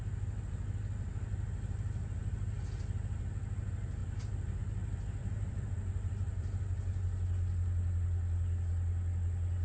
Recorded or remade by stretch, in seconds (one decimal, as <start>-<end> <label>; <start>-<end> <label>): 0.0-5.2 recorded; 5.2-5.7 remade; 5.7-9.6 recorded